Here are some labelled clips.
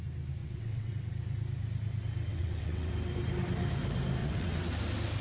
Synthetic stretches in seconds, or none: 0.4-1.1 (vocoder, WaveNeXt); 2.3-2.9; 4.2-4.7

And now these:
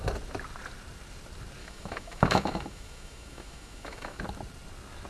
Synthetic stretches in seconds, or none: 1.6-4.2 (autoencoder, DAC-VAE)

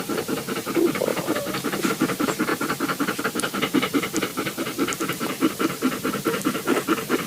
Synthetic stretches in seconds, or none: 0.0-2.5 (vocoder, BigVGAN v2); 3.2-7.3